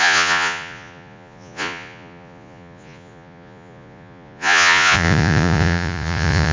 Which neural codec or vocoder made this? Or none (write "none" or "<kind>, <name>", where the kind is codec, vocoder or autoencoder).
vocoder, Vocos